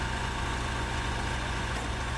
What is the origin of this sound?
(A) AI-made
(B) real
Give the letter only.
A